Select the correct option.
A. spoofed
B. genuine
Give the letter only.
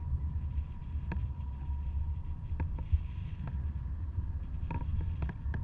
B